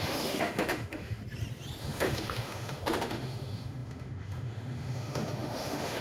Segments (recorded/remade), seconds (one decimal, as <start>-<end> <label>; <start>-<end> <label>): 0.0-1.2 remade; 1.2-1.8 recorded; 1.8-6.0 remade